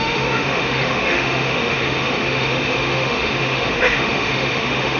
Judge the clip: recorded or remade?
remade